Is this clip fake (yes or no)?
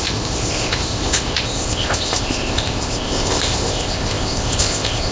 yes